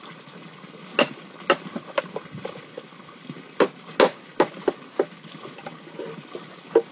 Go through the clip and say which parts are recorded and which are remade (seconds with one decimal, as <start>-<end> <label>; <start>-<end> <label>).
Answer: 0.0-6.9 recorded